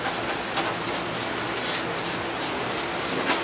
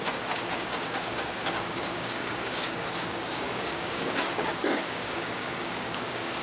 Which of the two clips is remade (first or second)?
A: second